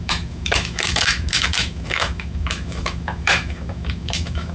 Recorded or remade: remade